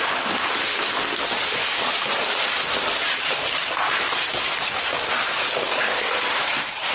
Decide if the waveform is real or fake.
real